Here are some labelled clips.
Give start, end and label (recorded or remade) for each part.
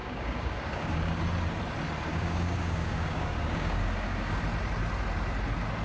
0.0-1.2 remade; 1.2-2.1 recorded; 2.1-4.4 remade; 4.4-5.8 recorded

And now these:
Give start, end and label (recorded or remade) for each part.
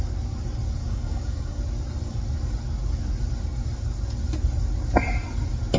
0.0-0.8 recorded; 0.8-1.6 remade; 1.6-5.8 recorded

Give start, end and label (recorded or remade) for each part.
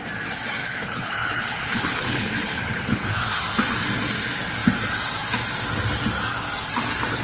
0.0-0.6 recorded; 0.6-3.4 remade; 3.4-7.2 recorded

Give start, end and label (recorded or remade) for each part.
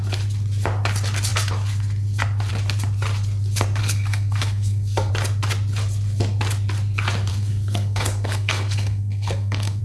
0.0-3.8 recorded; 3.8-5.1 remade; 5.1-7.3 recorded; 7.3-9.8 remade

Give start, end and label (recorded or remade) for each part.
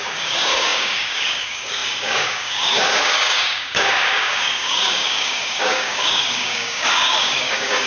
0.0-7.9 remade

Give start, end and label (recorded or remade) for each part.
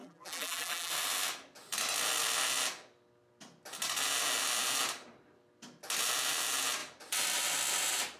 0.0-0.9 remade; 0.9-8.2 recorded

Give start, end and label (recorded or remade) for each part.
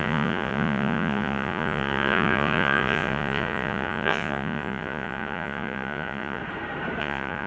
0.0-6.4 remade; 6.4-7.0 recorded; 7.0-7.5 remade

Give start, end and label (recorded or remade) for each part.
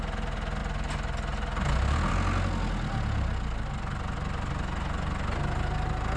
0.0-6.2 recorded